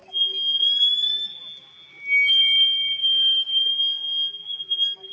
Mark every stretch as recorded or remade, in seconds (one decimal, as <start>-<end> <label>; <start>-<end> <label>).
0.0-3.0 recorded; 3.0-3.5 remade; 3.5-5.1 recorded